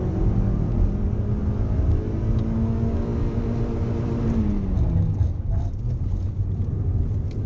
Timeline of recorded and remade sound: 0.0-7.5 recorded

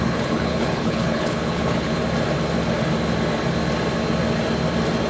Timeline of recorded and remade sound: 0.0-2.0 remade; 2.0-5.1 recorded

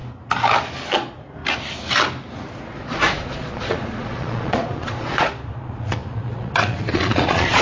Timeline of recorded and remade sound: 0.0-0.9 recorded; 0.9-1.4 remade; 1.4-2.8 recorded; 2.8-7.6 remade